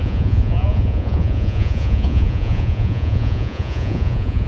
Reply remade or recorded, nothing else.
remade